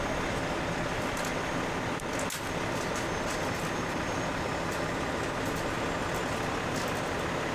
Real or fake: real